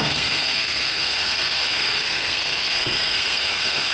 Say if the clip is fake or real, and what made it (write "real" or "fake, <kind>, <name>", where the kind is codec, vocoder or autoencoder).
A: fake, codec, SNAC